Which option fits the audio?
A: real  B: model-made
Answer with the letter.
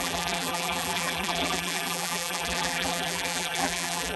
B